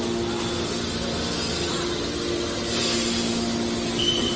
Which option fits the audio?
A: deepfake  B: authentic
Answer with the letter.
B